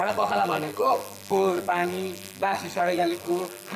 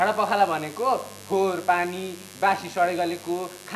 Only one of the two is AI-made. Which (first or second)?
first